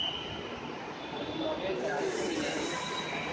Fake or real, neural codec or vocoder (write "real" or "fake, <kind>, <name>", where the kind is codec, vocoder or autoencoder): real